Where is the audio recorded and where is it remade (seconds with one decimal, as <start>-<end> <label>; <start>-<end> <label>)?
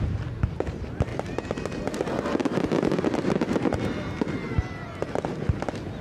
0.0-6.0 recorded